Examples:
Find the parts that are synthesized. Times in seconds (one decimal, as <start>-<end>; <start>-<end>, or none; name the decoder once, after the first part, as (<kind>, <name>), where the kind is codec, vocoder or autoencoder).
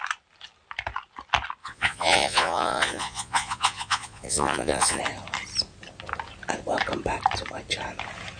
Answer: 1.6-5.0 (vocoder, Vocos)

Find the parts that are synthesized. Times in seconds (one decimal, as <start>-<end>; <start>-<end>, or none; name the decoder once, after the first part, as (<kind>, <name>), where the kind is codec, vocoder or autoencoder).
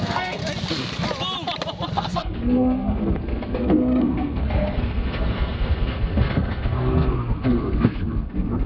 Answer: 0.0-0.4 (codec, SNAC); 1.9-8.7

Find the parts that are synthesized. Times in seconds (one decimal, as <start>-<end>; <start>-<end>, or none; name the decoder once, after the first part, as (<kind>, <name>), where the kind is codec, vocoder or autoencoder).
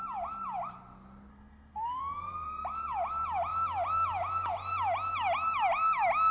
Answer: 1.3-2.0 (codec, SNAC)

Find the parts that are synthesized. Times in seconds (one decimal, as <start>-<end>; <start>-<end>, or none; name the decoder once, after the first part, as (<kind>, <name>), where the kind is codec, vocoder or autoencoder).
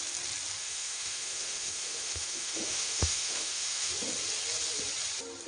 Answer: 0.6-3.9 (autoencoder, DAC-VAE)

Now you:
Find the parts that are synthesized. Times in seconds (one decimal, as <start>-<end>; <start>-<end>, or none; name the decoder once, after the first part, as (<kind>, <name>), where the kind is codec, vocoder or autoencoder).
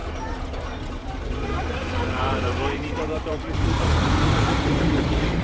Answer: 0.9-5.4 (vocoder, BigVGAN v2)